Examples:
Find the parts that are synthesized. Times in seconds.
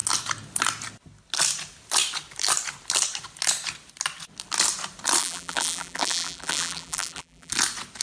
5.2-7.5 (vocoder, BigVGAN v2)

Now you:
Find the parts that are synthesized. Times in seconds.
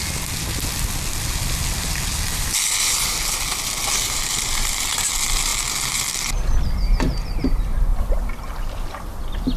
2.1-4.9 (vocoder, BigVGAN v2); 7.9-8.4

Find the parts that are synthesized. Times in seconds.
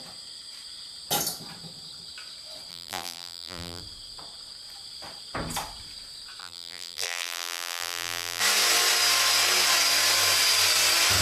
2.7-3.8 (vocoder, BigVGAN v2); 6.4-8.4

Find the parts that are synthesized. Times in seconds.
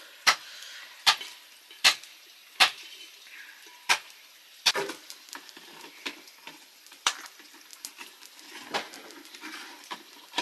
0.0-7.7 (vocoder, BigVGAN v2); 9.3-10.4